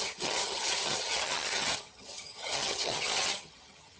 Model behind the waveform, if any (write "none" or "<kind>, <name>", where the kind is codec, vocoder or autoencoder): vocoder, HiFi-GAN